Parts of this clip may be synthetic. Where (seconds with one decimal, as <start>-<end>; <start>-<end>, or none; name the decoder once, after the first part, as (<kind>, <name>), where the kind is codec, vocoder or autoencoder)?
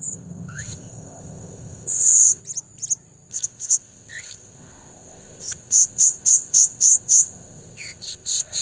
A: 0.0-2.4 (codec, ZipCodec); 3.3-8.6